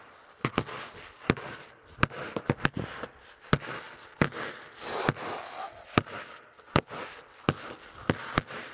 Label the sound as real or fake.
real